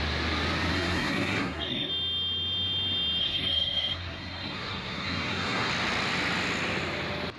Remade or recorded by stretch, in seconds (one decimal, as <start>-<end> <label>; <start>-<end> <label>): 0.0-0.7 recorded; 0.7-1.9 remade; 1.9-3.2 recorded; 3.2-5.7 remade; 5.7-7.4 recorded